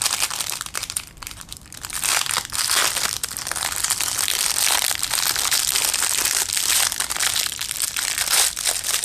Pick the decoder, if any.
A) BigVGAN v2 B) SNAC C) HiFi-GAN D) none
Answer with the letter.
A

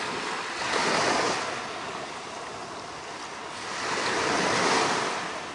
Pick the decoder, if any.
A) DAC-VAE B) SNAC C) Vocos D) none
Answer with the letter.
D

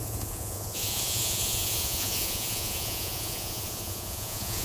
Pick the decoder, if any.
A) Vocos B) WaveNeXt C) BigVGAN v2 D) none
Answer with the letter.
A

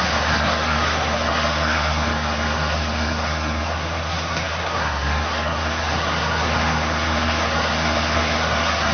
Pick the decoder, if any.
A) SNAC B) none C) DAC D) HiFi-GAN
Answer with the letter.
A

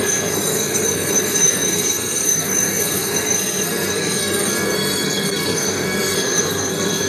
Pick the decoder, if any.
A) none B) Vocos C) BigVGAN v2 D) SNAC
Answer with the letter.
D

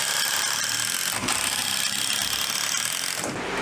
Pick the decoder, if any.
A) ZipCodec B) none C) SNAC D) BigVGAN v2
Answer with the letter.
B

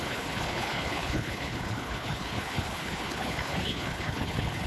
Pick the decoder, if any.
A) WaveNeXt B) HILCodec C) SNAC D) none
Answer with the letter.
B